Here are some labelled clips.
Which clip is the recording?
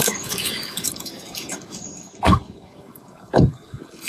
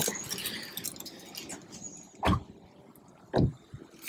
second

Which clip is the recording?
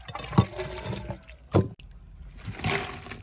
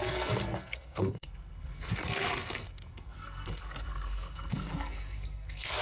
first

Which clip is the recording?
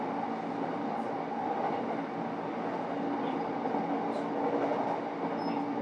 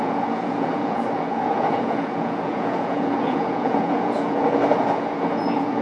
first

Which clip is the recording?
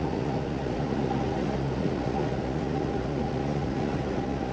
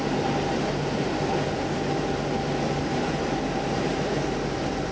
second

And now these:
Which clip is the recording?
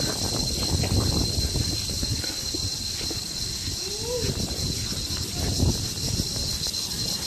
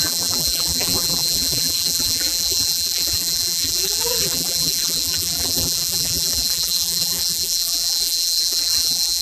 first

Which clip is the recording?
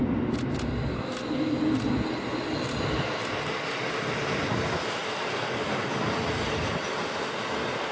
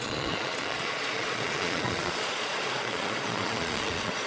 first